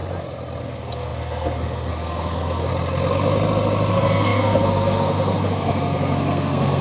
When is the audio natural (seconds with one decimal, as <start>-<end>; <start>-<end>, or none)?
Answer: 0.0-0.6; 2.7-3.9